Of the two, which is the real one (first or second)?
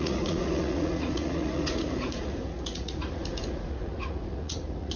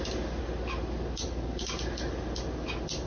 second